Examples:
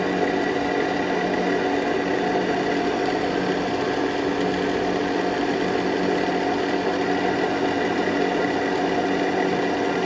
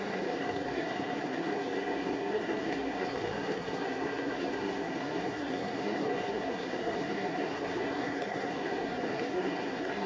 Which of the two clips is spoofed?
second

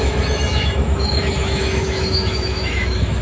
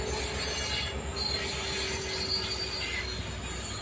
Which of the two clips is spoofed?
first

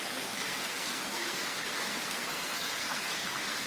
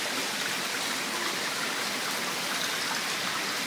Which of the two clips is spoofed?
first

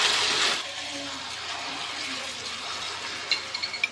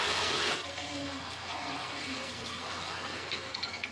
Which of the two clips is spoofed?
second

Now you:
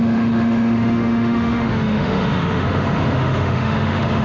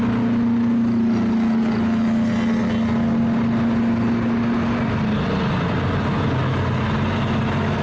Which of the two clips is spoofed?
first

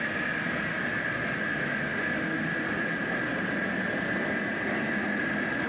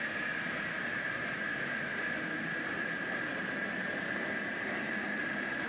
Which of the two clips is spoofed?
second